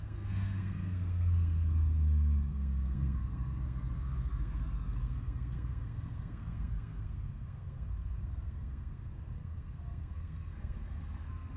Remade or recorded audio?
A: remade